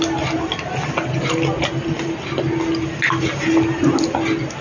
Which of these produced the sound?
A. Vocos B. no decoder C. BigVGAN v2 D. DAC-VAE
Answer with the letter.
B